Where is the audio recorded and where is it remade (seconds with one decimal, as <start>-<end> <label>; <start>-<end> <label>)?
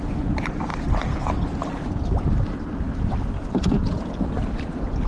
0.0-5.1 recorded